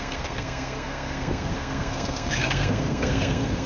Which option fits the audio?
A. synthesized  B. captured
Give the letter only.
A